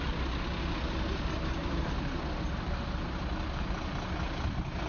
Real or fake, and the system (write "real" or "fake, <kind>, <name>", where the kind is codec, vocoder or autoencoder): real